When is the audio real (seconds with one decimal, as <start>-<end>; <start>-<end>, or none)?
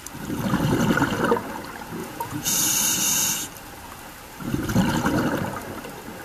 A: 0.0-2.0; 2.5-6.2